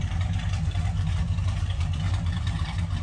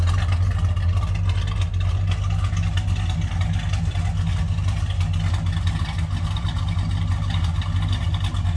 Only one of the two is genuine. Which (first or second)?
second